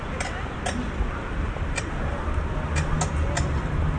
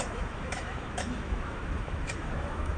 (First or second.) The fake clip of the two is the second